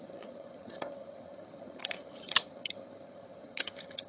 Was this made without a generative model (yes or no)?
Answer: no